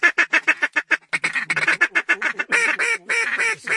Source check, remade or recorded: recorded